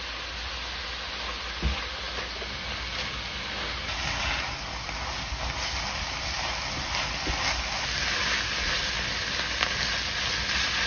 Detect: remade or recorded recorded